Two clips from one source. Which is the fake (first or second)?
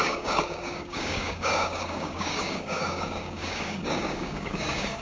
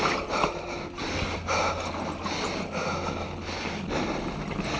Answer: first